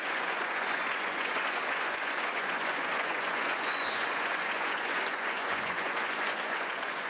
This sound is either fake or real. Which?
fake